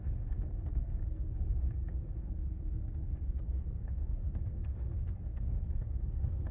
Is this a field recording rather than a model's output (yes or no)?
no